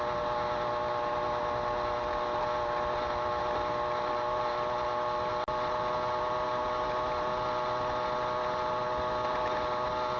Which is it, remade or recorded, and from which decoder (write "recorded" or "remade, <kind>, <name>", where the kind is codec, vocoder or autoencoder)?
recorded